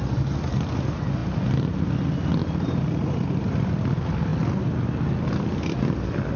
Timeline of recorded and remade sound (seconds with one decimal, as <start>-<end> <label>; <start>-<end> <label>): 0.0-2.4 recorded; 2.4-3.5 remade; 3.5-6.4 recorded